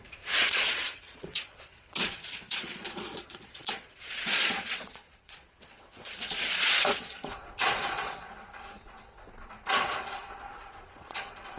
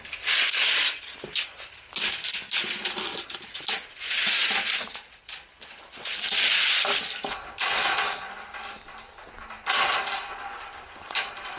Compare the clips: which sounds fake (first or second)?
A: first